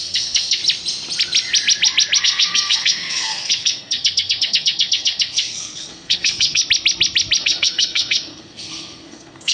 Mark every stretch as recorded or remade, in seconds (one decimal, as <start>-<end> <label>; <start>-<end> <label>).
0.0-0.6 remade; 0.6-2.2 recorded; 2.2-6.6 remade; 6.6-7.4 recorded; 7.4-9.5 remade